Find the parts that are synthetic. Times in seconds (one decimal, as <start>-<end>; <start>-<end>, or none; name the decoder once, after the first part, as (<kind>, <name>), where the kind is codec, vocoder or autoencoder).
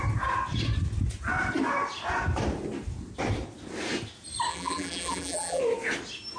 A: 4.5-5.6 (vocoder, BigVGAN v2)